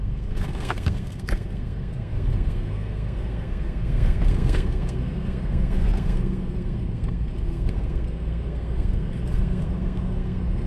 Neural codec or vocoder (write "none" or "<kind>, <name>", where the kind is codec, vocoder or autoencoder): codec, SNAC